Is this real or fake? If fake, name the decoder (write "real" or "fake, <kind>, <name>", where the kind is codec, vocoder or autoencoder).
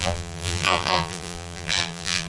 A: fake, vocoder, BigVGAN v2